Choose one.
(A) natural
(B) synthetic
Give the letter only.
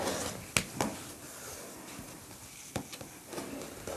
A